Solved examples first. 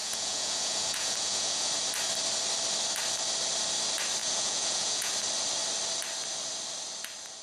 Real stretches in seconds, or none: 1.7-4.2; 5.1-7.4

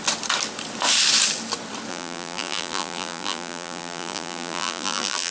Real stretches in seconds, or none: 0.0-1.9

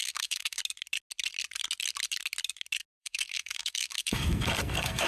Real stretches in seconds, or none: 0.6-3.0